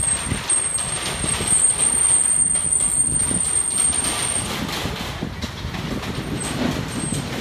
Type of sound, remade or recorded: recorded